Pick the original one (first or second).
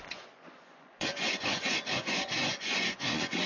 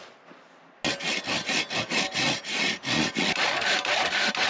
second